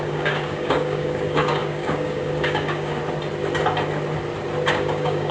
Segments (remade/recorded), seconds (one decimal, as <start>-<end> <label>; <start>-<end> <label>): 0.0-3.0 remade; 3.0-4.7 recorded; 4.7-5.3 remade